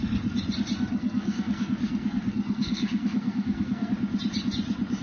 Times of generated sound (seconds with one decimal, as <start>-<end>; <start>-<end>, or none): 0.9-3.9